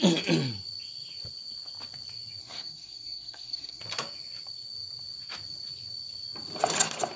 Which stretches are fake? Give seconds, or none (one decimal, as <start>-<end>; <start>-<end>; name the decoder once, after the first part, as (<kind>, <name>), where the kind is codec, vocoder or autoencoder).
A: 2.4-3.8 (codec, SNAC)